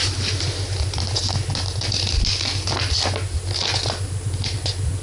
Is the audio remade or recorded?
recorded